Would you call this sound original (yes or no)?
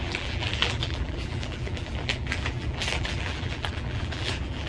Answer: no